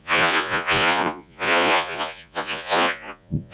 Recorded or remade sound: remade